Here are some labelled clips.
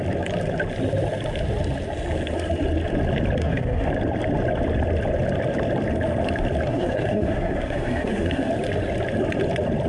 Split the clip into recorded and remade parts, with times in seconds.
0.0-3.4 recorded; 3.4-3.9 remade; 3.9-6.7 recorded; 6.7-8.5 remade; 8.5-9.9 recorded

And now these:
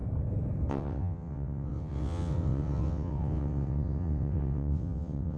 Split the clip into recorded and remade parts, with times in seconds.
0.0-0.7 recorded; 0.7-5.4 remade

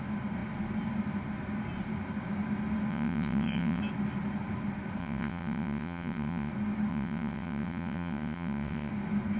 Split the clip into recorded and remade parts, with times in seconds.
0.0-2.9 recorded; 2.9-3.8 remade; 3.8-5.0 recorded; 5.0-6.5 remade; 6.5-6.9 recorded; 6.9-8.9 remade; 8.9-9.4 recorded

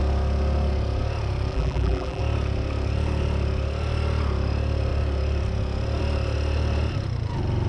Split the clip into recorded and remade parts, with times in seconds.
0.0-1.5 recorded; 1.5-2.2 remade; 2.2-7.7 recorded

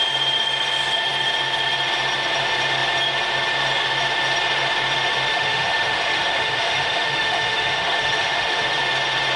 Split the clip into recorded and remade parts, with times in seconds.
0.0-5.3 recorded; 5.3-8.8 remade; 8.8-9.4 recorded

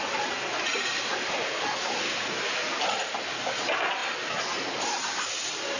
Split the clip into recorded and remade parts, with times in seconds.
0.0-5.8 recorded

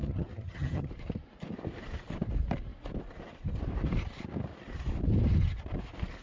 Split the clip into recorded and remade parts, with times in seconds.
0.0-0.9 remade; 0.9-6.2 recorded

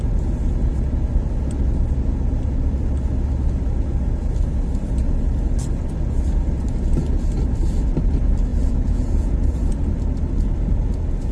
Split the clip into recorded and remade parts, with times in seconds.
0.0-8.5 recorded; 8.5-9.7 remade; 9.7-11.3 recorded